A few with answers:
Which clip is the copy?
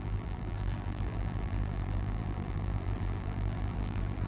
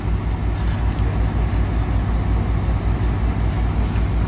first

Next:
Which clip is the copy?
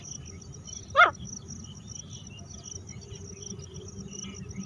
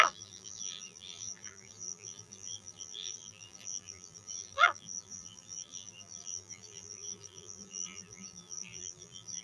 second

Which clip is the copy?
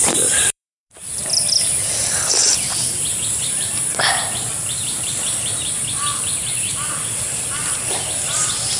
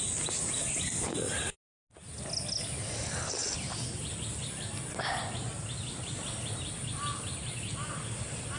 first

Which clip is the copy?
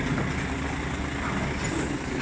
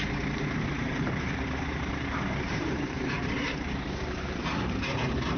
second